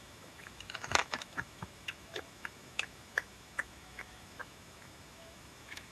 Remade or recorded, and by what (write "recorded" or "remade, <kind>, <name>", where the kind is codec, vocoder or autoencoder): remade, autoencoder, DAC-VAE